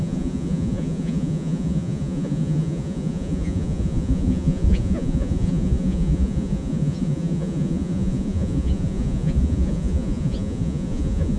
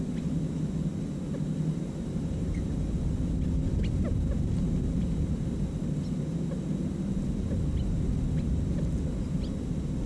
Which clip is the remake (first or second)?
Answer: first